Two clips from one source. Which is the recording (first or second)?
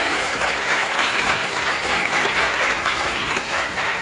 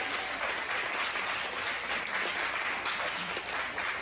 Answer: second